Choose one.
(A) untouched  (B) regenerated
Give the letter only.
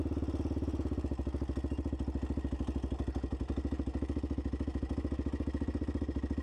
A